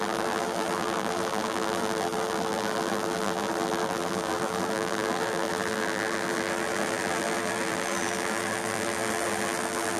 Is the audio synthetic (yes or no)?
yes